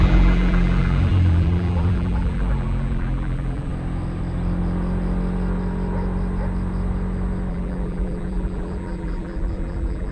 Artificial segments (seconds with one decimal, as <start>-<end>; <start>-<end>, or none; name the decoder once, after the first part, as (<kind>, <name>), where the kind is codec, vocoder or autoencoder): 0.0-3.7 (vocoder, BigVGAN v2); 7.5-10.1

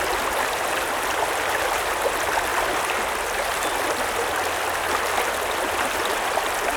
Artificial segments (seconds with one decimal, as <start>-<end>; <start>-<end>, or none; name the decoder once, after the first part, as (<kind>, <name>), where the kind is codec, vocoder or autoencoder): none